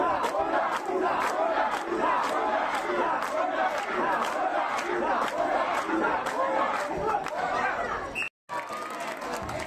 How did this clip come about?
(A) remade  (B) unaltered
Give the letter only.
B